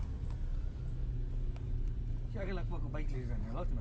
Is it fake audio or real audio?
real